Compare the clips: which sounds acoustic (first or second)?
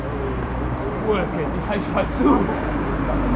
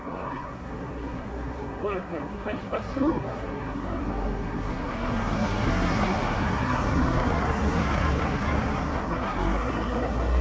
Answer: first